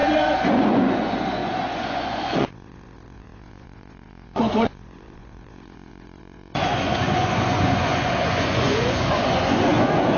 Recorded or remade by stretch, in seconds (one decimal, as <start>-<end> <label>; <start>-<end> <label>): 0.0-10.2 remade